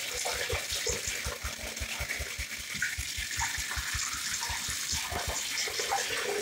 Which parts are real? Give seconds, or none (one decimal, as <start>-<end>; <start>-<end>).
0.0-6.4